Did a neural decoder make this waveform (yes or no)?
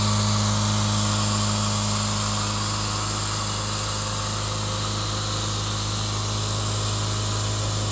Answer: no